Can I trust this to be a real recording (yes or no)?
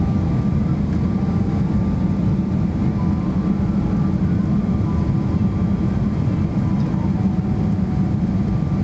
yes